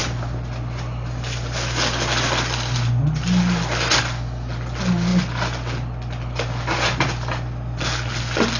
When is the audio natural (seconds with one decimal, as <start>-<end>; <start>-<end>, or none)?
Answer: 0.0-8.6